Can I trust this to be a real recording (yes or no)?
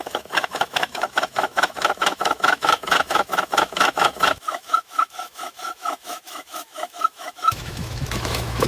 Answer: no